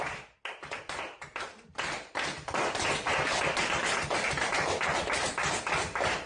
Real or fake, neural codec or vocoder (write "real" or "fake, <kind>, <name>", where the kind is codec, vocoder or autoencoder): real